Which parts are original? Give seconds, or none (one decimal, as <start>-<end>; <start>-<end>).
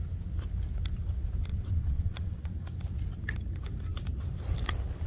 0.0-1.5; 2.5-5.1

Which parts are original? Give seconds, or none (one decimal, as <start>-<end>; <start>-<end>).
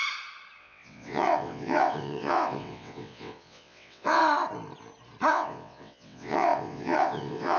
0.0-0.6; 4.2-5.3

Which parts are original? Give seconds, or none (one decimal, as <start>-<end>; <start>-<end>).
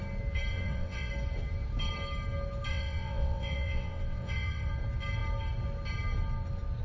0.0-0.5; 1.1-2.7; 4.7-6.8